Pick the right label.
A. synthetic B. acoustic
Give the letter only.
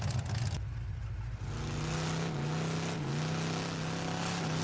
B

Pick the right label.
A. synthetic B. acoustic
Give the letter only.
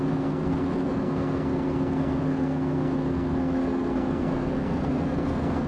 A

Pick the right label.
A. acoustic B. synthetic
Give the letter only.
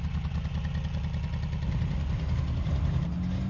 A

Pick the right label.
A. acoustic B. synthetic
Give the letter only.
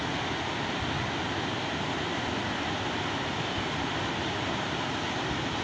A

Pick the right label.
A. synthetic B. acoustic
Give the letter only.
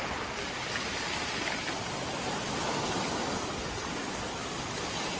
B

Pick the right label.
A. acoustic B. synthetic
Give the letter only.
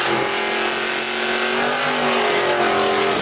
A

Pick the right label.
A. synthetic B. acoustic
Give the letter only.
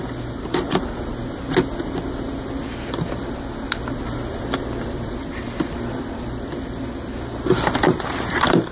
A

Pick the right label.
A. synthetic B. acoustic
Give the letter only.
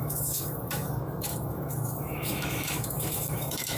A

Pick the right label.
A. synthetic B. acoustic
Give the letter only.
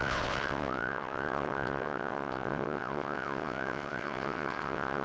A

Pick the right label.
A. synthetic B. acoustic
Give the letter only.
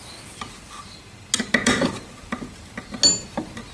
B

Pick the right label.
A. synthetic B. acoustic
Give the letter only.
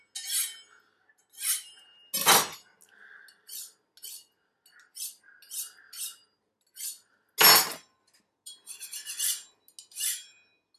B